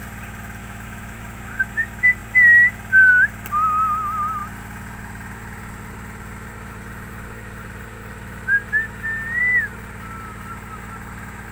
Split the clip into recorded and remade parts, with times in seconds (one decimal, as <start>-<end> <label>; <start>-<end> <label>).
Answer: 0.0-0.6 recorded; 0.6-1.4 remade; 1.4-11.5 recorded